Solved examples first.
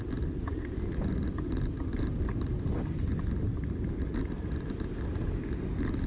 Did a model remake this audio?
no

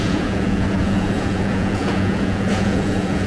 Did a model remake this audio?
yes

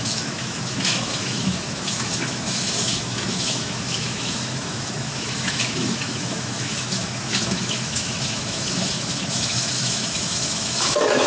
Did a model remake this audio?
yes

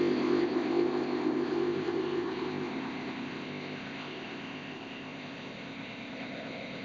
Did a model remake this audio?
yes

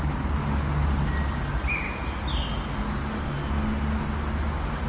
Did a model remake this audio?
no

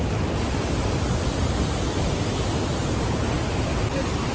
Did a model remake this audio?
no